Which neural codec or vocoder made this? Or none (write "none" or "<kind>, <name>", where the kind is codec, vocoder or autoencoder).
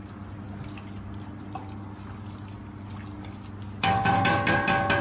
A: none